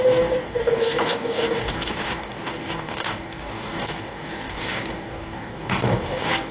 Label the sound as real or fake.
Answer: fake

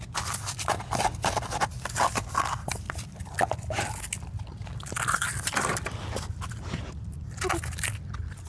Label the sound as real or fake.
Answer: real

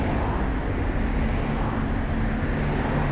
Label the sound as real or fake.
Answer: real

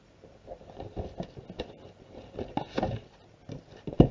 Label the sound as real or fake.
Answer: real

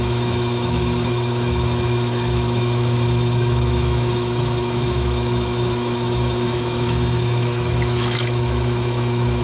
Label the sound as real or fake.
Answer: fake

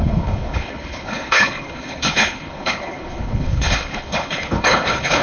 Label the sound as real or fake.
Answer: fake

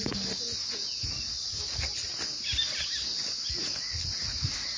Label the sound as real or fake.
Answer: real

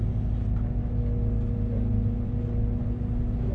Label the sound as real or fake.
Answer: real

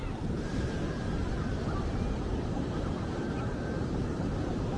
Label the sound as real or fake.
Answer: fake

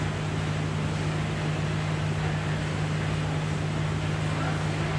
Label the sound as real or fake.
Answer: real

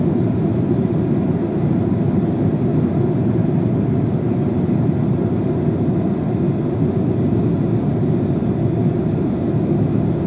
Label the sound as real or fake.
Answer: real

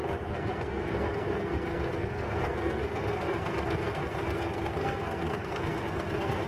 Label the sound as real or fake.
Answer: fake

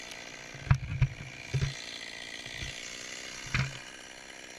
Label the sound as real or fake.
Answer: real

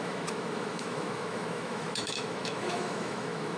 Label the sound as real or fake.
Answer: fake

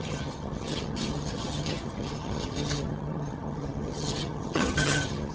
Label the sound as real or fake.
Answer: fake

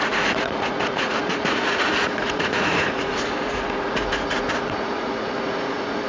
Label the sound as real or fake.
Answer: fake